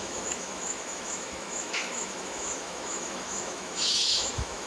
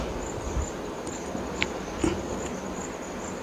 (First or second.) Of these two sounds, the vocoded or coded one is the first